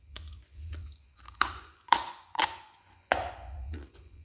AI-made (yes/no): yes